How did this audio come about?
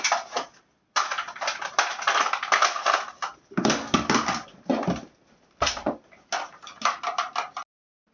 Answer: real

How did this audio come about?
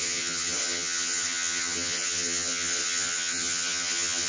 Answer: fake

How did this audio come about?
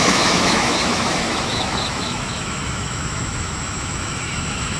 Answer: fake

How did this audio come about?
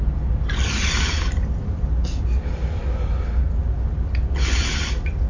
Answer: real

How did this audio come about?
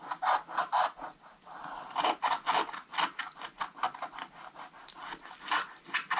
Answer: real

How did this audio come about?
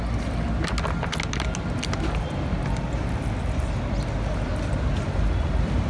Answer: real